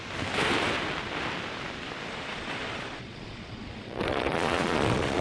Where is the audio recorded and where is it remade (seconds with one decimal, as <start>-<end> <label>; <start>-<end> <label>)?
0.0-2.1 recorded; 2.1-5.2 remade